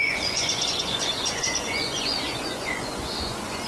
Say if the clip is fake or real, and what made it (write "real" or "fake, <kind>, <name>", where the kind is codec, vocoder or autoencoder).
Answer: fake, vocoder, Vocos